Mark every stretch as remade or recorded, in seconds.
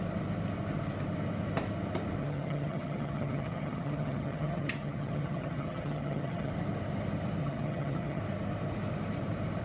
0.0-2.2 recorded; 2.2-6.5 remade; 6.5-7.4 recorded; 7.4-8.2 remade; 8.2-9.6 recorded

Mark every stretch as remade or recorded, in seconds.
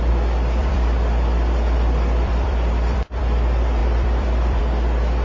0.0-0.6 recorded; 0.6-3.2 remade; 3.2-3.8 recorded; 3.8-4.6 remade; 4.6-5.2 recorded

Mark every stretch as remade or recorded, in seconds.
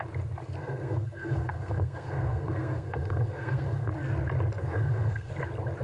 0.0-0.6 recorded; 0.6-3.9 remade; 3.9-4.6 recorded; 4.6-5.3 remade; 5.3-5.8 recorded